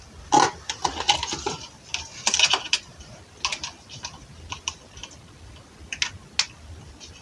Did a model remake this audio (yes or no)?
no